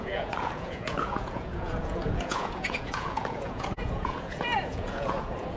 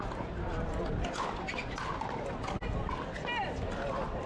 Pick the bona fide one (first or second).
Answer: second